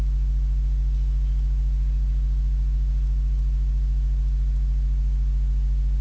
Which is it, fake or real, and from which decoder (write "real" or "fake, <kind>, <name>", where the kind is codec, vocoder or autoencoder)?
real